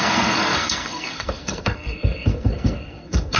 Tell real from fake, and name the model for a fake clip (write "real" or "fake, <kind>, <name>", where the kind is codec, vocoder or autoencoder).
fake, codec, SNAC